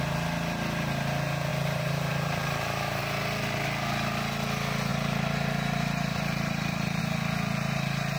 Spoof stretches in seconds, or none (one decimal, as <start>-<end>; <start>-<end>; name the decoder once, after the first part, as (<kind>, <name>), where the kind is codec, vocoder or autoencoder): 1.5-3.0 (vocoder, BigVGAN v2); 4.9-7.0

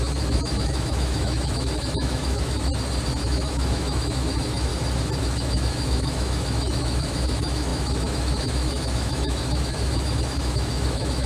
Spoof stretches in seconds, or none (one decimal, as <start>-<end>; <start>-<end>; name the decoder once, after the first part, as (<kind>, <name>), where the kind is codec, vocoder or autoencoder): 0.0-2.7 (autoencoder, DAC-VAE); 3.2-4.7; 5.2-11.3

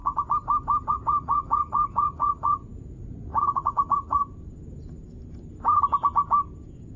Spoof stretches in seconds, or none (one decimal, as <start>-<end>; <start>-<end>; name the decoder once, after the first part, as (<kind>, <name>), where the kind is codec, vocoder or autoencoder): 0.9-4.2 (vocoder, Vocos)

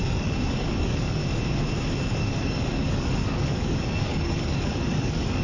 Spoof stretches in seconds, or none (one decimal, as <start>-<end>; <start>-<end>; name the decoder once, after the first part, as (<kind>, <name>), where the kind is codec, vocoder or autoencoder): 0.0-1.2 (codec, DAC); 2.1-5.4

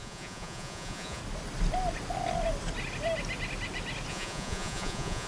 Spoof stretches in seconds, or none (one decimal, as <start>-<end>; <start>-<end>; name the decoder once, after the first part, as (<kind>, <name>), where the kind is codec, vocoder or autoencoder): 0.0-1.2 (vocoder, Vocos); 4.1-5.3

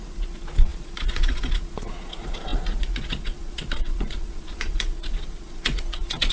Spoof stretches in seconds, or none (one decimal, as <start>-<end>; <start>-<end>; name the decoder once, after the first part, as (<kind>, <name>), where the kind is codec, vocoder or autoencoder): 0.0-6.3 (vocoder, Vocos)